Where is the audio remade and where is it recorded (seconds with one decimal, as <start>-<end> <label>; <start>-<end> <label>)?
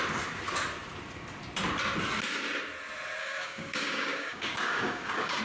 0.0-3.2 recorded; 3.2-5.4 remade